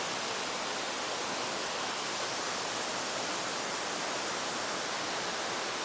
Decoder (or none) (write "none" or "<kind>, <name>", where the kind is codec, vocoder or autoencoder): none